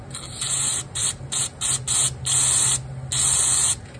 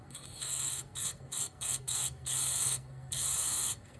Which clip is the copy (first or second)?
second